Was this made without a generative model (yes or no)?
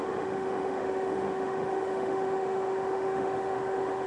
no